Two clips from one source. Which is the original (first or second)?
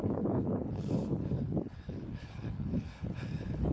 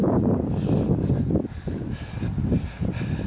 second